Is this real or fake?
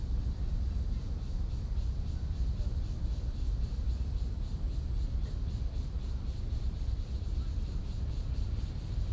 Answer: fake